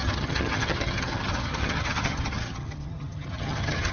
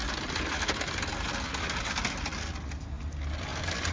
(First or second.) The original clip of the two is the second